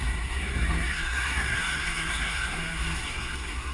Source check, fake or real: fake